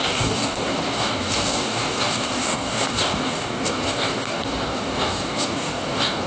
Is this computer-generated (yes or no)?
yes